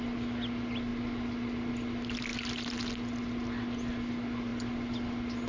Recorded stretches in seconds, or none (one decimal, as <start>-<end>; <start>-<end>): 0.0-5.5